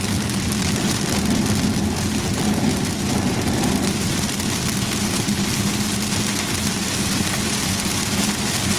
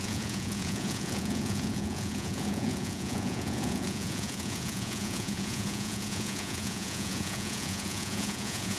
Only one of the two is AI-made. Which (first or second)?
second